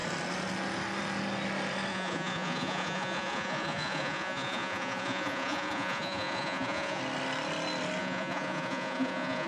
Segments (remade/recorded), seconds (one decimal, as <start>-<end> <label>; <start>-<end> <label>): 0.0-1.9 recorded; 1.9-7.0 remade; 7.0-8.0 recorded; 8.0-9.5 remade